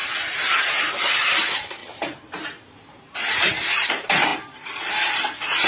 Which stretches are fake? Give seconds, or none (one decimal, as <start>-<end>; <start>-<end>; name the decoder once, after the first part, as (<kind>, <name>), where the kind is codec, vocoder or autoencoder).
0.0-5.7 (vocoder, BigVGAN v2)